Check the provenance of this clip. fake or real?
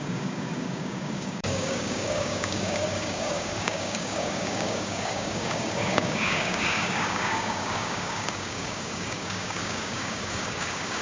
fake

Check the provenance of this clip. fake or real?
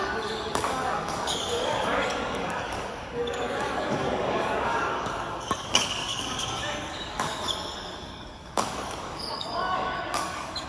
fake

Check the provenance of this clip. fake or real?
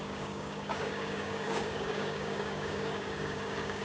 fake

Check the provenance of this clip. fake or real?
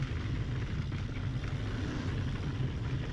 real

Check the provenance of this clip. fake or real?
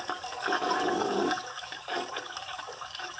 fake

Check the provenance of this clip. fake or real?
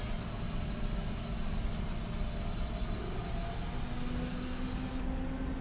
real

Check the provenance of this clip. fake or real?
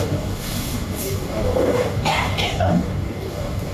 fake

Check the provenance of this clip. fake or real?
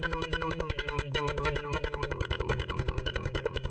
fake